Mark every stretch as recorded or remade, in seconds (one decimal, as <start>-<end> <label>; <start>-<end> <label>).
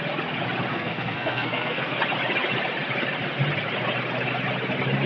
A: 0.0-0.7 recorded; 0.7-2.0 remade; 2.0-5.1 recorded